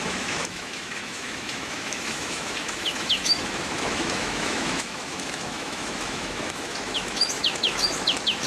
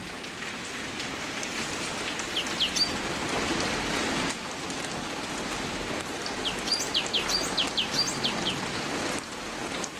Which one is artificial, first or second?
first